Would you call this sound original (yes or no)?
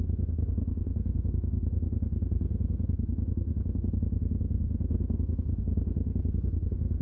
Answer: no